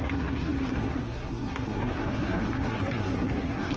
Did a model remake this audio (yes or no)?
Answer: yes